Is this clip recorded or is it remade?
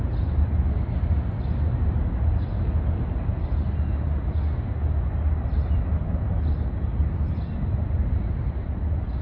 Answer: recorded